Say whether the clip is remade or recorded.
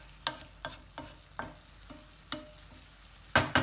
recorded